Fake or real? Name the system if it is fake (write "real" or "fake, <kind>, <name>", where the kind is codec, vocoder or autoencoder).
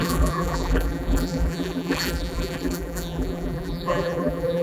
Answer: fake, vocoder, BigVGAN v2